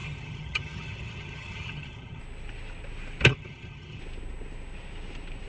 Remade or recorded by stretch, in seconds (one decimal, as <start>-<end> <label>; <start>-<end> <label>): 0.0-2.2 remade; 2.2-3.3 recorded; 3.3-4.0 remade; 4.0-5.5 recorded